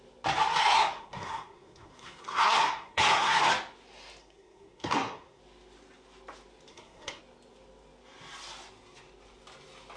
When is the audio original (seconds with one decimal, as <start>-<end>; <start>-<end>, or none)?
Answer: 0.0-0.6; 3.4-4.2; 5.4-6.7; 7.2-10.0